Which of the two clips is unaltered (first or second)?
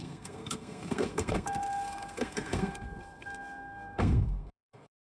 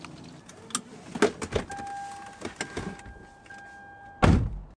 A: second